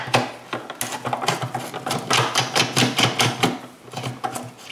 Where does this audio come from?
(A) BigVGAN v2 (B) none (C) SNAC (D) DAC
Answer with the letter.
B